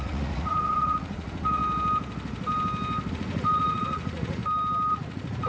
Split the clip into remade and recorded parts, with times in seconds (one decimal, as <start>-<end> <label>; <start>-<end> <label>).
0.0-1.6 remade; 1.6-3.1 recorded; 3.1-4.4 remade; 4.4-4.9 recorded; 4.9-5.5 remade